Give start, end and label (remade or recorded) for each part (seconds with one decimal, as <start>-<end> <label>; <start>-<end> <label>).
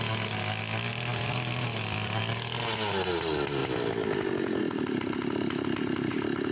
0.0-0.9 recorded; 0.9-2.2 remade; 2.2-6.5 recorded